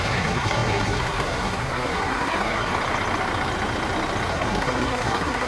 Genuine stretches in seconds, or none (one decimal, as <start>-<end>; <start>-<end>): 2.7-4.3